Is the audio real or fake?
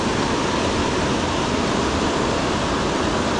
real